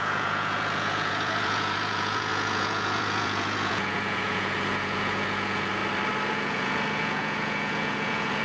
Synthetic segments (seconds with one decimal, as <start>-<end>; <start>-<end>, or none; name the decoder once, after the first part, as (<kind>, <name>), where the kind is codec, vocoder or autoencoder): 0.0-5.8 (vocoder, Vocos); 6.3-8.4